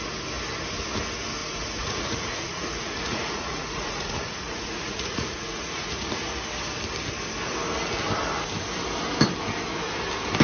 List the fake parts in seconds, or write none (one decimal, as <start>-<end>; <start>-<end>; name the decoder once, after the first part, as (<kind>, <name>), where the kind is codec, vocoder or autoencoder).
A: 1.4-6.1 (vocoder, Vocos)

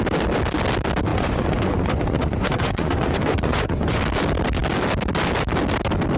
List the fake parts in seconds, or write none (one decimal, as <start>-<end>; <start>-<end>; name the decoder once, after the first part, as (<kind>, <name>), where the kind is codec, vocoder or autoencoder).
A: 1.1-4.0 (vocoder, Vocos)

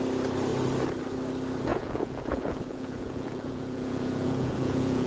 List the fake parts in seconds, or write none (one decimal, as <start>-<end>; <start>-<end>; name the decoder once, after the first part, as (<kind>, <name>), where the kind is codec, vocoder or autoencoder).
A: 1.7-5.1 (vocoder, Vocos)

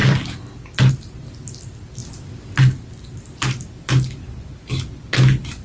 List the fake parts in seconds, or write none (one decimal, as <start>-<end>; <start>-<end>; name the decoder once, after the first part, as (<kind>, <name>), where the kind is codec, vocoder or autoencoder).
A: none

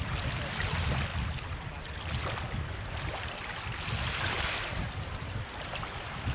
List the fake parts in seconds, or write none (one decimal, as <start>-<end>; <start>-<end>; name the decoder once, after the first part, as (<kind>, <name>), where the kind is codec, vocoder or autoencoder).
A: none